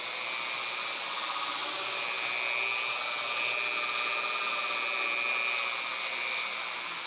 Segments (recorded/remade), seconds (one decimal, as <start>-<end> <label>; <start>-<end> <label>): 0.0-7.1 recorded